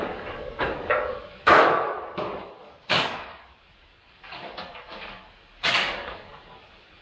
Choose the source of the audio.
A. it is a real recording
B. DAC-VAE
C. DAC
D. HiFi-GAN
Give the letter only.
C